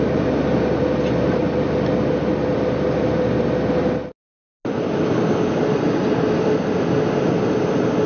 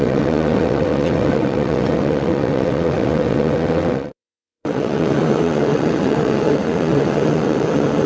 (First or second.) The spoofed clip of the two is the second